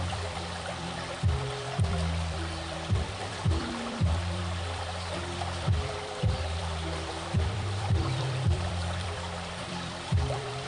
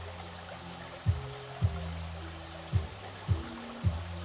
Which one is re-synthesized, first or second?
first